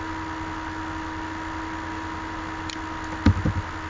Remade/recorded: recorded